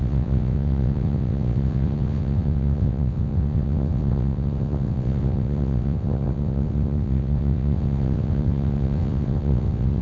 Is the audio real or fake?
fake